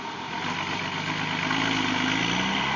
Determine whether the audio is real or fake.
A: real